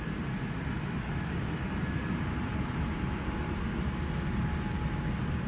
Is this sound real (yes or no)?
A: yes